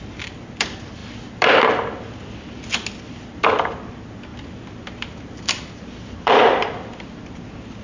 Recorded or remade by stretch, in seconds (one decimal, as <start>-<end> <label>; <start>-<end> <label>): 0.0-4.3 recorded; 4.3-7.3 remade; 7.3-7.8 recorded